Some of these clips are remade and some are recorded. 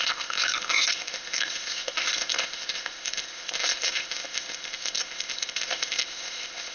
remade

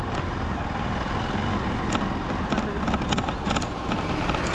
recorded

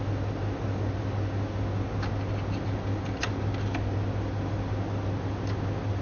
recorded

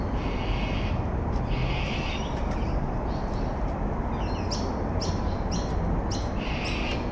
recorded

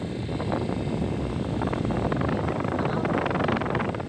recorded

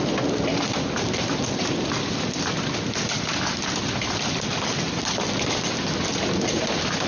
recorded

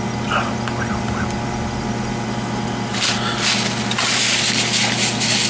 recorded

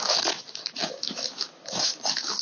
remade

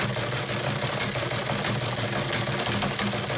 recorded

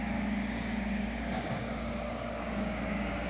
remade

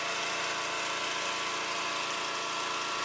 recorded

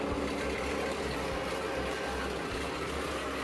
recorded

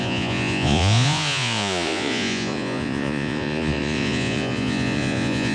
remade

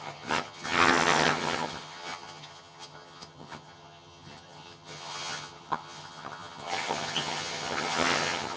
remade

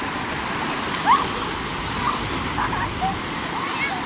recorded